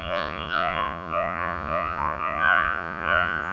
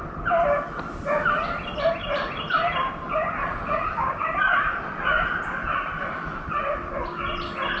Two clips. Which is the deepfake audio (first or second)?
first